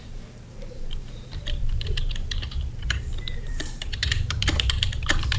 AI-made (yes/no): yes